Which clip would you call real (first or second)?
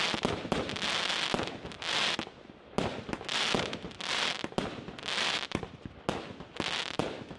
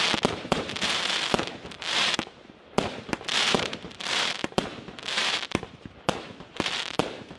first